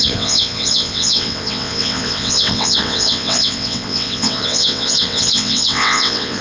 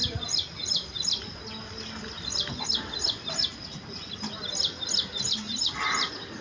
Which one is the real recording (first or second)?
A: second